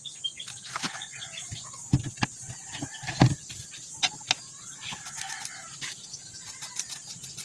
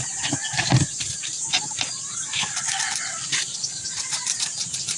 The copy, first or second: second